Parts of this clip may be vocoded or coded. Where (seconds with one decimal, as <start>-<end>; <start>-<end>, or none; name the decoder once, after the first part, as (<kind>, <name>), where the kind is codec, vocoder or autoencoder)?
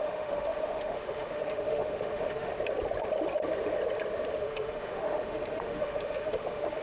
0.0-2.5 (autoencoder, DAC-VAE); 4.4-6.8